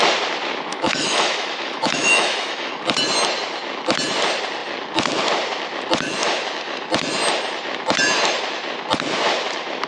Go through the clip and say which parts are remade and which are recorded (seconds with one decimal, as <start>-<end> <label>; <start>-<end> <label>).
0.0-0.7 recorded; 0.7-2.7 remade; 2.7-9.9 recorded